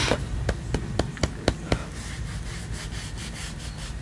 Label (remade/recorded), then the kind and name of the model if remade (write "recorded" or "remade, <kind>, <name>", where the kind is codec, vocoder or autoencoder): recorded